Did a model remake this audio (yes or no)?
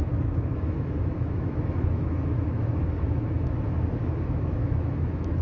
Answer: yes